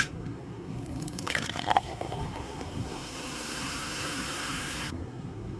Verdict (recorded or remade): remade